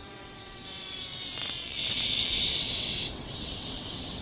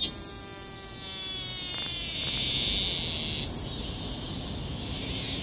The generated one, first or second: first